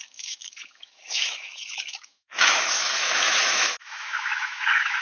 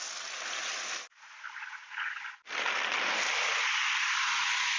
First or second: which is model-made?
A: first